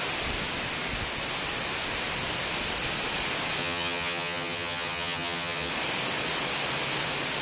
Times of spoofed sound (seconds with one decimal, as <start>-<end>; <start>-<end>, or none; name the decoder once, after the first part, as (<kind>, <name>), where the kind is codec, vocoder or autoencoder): 3.6-5.7 (vocoder, HiFi-GAN)